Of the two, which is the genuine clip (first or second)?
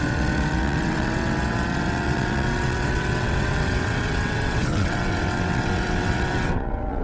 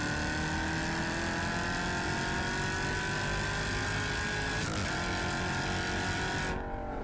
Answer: second